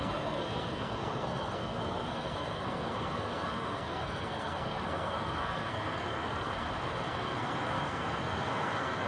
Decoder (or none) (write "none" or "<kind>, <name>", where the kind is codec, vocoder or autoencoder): codec, SNAC